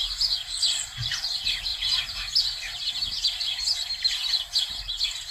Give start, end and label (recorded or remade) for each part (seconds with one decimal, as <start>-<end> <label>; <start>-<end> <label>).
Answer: 0.0-5.3 recorded